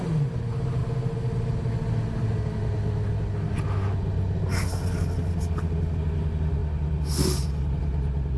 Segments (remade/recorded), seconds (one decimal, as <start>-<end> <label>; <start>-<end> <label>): 0.0-8.4 recorded